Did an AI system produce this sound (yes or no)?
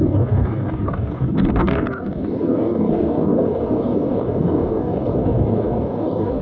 yes